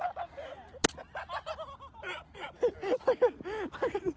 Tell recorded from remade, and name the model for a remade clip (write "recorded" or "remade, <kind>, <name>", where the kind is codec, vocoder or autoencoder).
recorded